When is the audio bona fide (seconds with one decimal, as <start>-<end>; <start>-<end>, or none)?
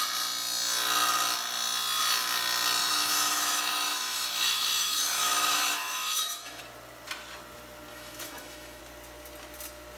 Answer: 0.0-2.8; 6.6-7.9; 8.8-10.0